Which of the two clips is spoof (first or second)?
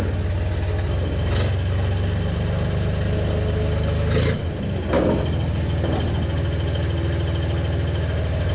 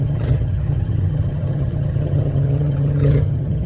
second